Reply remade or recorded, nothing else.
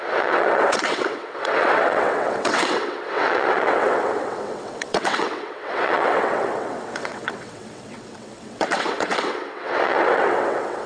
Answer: remade